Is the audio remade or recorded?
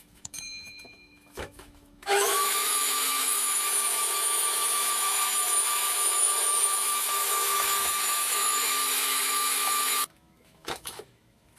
remade